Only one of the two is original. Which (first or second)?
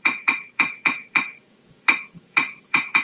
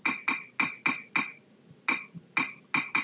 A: second